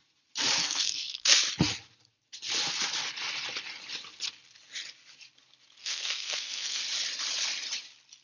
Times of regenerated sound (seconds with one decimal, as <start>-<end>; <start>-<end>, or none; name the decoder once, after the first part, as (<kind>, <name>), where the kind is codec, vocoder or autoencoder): 0.6-1.4 (codec, SNAC); 5.8-6.8